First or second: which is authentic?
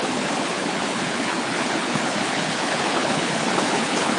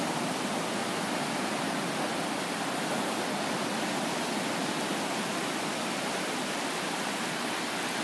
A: second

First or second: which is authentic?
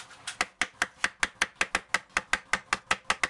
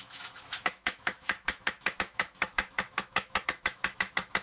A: first